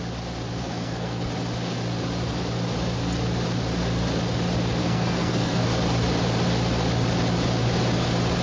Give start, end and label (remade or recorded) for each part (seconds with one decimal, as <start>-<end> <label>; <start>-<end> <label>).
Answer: 0.0-0.6 recorded; 0.6-1.3 remade; 1.3-4.8 recorded; 4.8-5.6 remade; 5.6-8.4 recorded